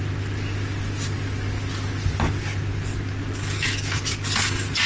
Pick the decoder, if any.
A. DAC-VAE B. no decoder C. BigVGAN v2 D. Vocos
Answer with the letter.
B